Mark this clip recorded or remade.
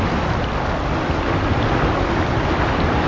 recorded